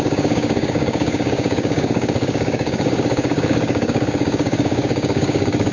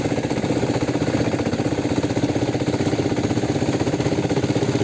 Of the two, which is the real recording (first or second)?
second